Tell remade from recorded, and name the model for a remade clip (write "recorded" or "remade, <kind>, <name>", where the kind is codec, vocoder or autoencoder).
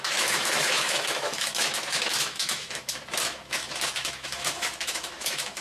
remade, autoencoder, DAC-VAE